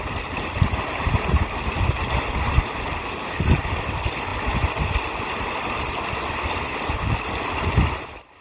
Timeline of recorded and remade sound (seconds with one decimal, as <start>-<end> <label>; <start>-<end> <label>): 0.0-8.4 recorded

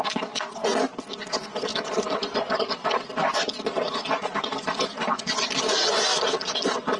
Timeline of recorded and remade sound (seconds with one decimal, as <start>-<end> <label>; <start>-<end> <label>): 0.0-1.7 recorded; 1.7-5.9 remade; 5.9-7.0 recorded

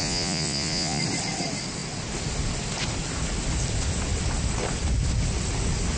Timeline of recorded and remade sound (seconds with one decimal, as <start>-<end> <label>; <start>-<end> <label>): 0.0-1.0 remade; 1.0-6.0 recorded

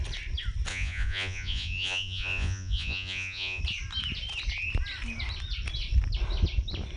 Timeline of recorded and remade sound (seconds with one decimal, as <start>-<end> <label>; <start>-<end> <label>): 0.0-0.7 recorded; 0.7-3.6 remade; 3.6-7.0 recorded

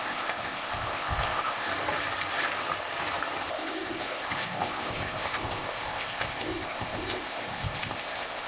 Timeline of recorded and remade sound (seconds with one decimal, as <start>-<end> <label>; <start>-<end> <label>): 0.0-1.7 remade; 1.7-3.5 recorded; 3.5-8.5 remade

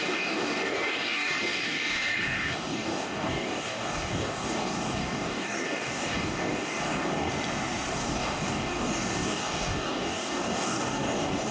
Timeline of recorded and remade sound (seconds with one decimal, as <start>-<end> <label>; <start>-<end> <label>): 0.0-7.3 remade; 7.3-7.9 recorded; 7.9-11.5 remade